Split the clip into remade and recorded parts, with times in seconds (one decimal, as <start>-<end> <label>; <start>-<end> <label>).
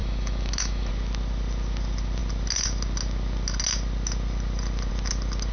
0.0-0.9 remade; 0.9-5.5 recorded